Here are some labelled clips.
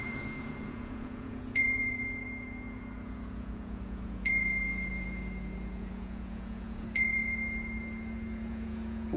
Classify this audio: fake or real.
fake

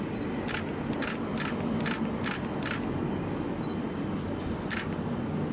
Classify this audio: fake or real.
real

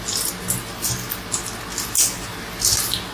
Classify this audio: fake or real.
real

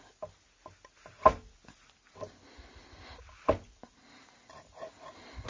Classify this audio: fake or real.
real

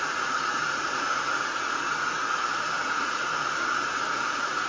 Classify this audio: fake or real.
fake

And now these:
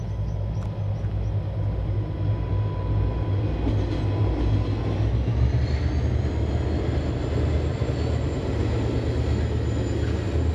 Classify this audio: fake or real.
real